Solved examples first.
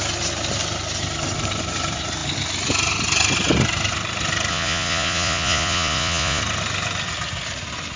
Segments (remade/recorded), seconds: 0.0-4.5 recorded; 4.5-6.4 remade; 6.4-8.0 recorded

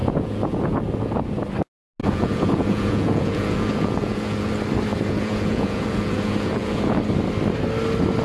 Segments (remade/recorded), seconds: 0.0-0.8 remade; 0.8-2.0 recorded; 2.0-4.5 remade; 4.5-4.9 recorded; 4.9-7.0 remade; 7.0-8.2 recorded

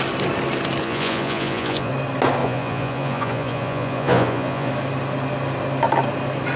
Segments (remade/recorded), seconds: 0.0-0.8 recorded; 0.8-1.9 remade; 1.9-2.4 recorded; 2.4-4.7 remade; 4.7-6.6 recorded

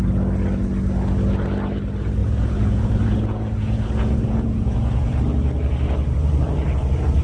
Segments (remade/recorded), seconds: 0.0-2.2 recorded; 2.2-5.2 remade; 5.2-7.2 recorded

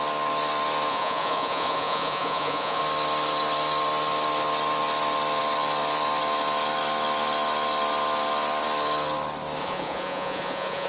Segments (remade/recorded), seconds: 0.0-0.9 recorded; 0.9-2.8 remade; 2.8-9.6 recorded; 9.6-10.9 remade